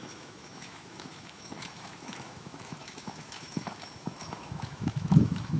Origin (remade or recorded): remade